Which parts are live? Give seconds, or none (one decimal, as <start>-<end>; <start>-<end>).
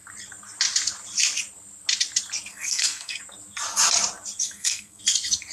0.0-2.5; 3.2-4.4; 5.0-5.5